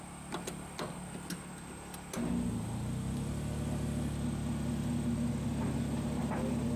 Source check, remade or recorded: recorded